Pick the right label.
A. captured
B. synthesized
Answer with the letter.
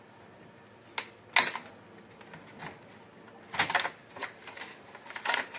A